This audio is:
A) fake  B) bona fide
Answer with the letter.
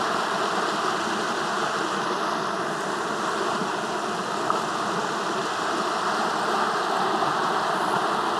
B